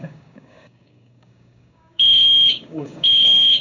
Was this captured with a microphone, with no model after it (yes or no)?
no